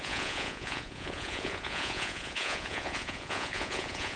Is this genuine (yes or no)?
no